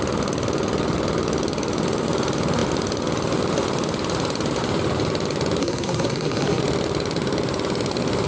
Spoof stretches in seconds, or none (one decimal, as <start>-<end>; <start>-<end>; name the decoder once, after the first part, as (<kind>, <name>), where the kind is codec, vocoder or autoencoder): 5.6-6.6 (codec, SNAC)